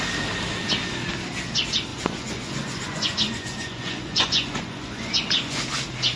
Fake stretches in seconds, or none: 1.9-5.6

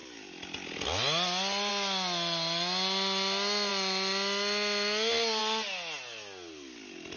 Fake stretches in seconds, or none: none

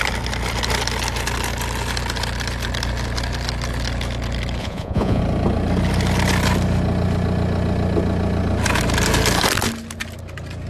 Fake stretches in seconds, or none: 4.6-5.2

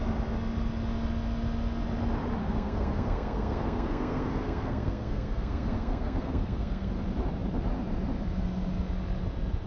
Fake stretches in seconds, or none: 2.4-6.9

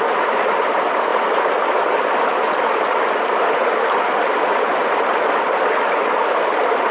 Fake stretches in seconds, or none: none